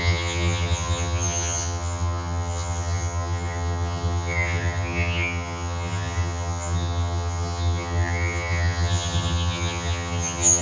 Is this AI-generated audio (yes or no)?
yes